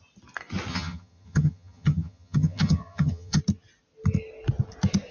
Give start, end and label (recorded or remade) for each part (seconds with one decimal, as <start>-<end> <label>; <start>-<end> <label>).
0.0-0.7 recorded; 0.7-3.4 remade; 3.4-5.1 recorded